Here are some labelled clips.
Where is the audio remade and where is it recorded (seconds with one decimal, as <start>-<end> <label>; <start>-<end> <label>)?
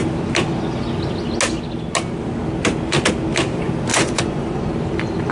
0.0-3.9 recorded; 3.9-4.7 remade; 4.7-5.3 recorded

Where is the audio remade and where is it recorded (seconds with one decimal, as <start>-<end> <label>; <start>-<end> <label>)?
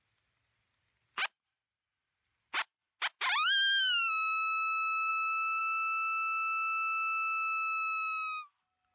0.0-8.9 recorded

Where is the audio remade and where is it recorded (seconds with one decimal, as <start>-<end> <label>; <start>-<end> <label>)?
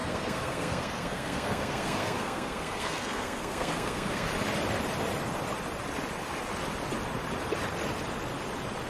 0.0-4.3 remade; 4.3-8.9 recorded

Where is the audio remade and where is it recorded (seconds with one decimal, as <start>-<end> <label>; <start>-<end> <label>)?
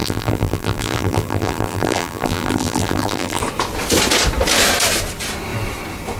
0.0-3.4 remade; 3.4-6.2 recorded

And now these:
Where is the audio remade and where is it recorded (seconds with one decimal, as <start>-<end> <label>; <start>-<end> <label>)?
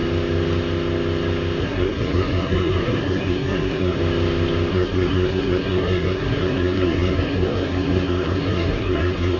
0.0-1.6 recorded; 1.6-4.0 remade; 4.0-4.7 recorded; 4.7-9.4 remade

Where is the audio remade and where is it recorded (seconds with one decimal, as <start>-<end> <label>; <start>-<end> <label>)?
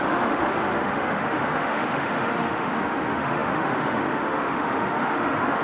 0.0-5.6 remade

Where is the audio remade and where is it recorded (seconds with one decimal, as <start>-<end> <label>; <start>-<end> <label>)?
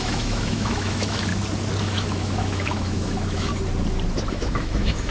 0.0-1.3 remade; 1.3-1.8 recorded; 1.8-3.5 remade; 3.5-4.3 recorded; 4.3-5.1 remade